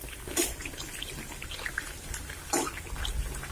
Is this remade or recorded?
recorded